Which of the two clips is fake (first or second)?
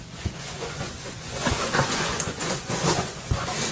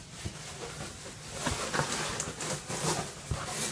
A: first